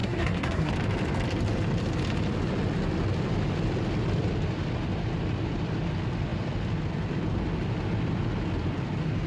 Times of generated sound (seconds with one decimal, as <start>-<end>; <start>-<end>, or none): 0.0-0.7